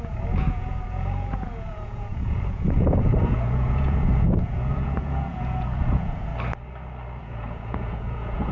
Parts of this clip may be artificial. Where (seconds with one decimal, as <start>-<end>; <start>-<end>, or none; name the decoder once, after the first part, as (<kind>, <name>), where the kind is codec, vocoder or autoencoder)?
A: 0.0-6.3 (vocoder, Vocos); 7.2-8.5